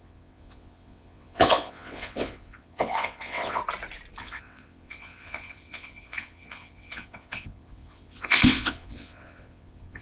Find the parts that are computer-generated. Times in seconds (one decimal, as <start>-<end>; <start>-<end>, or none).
0.0-3.6; 4.2-10.0